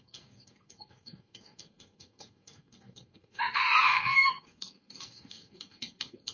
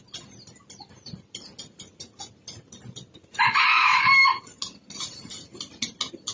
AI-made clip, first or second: first